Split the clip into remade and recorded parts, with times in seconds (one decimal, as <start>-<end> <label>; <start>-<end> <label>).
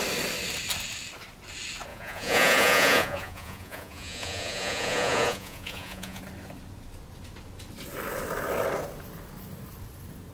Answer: 0.0-1.9 recorded; 1.9-6.2 remade; 6.2-10.3 recorded